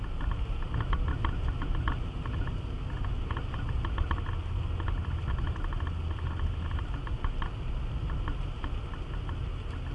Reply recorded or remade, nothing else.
recorded